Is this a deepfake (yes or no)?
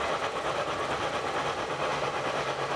no